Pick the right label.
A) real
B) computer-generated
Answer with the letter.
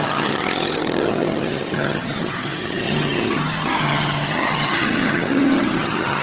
B